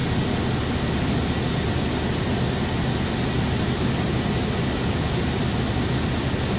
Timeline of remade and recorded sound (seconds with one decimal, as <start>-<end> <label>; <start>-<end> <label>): 0.0-6.6 recorded

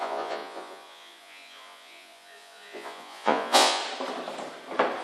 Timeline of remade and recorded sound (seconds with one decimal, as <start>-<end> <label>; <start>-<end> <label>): 0.0-3.8 remade; 3.8-5.0 recorded

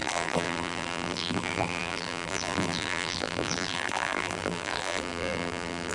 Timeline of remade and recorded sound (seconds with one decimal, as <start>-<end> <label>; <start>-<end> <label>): 0.0-5.9 remade

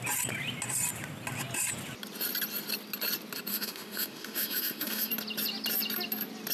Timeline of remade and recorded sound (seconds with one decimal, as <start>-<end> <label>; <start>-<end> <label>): 0.0-3.5 recorded; 3.5-5.1 remade; 5.1-6.5 recorded

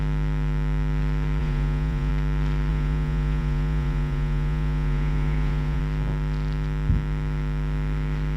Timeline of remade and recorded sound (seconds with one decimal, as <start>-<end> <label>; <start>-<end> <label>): 0.0-1.4 recorded; 1.4-2.1 remade; 2.1-2.7 recorded; 2.7-5.8 remade; 5.8-8.4 recorded

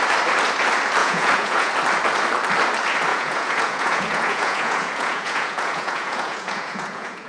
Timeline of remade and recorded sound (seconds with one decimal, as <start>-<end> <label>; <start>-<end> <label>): 0.0-1.0 recorded; 1.0-1.7 remade; 1.7-3.1 recorded; 3.1-7.3 remade

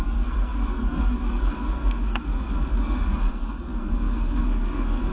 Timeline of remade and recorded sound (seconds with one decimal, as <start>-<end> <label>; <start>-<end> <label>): 0.0-5.1 remade

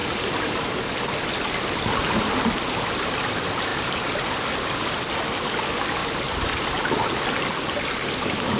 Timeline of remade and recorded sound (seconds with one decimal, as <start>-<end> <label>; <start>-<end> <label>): 0.0-8.6 recorded